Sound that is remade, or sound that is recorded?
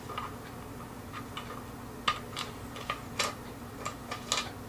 recorded